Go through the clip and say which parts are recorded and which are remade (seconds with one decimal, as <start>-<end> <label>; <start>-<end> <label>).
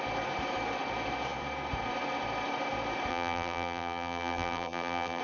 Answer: 0.0-3.1 recorded; 3.1-5.2 remade